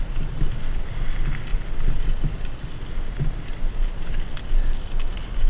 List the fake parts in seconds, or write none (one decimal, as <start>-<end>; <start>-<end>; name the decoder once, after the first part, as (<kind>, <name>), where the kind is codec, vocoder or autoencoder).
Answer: none